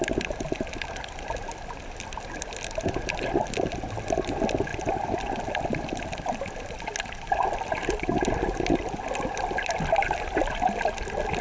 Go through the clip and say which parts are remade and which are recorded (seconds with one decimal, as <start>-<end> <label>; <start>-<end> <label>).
0.0-11.4 recorded